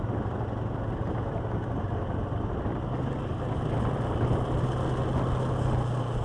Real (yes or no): yes